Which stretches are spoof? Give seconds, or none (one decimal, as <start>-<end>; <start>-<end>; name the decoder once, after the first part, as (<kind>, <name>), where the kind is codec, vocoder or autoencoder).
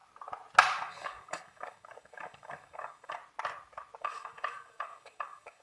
0.9-3.2 (codec, DAC); 4.0-5.6